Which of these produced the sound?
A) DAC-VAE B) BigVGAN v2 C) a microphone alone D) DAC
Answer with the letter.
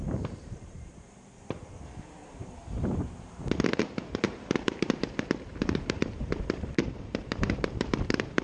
B